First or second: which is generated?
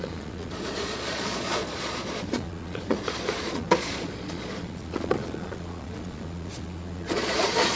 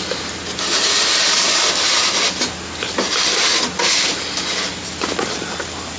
first